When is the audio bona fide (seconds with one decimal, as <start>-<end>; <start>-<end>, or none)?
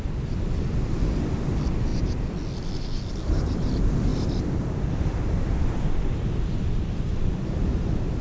0.0-8.2